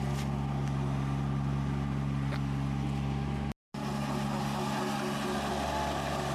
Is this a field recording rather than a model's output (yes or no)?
yes